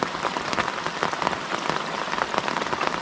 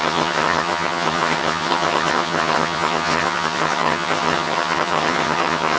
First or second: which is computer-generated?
second